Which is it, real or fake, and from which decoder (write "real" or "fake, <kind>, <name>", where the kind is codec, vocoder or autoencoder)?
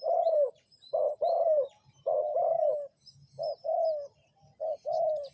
fake, vocoder, BigVGAN v2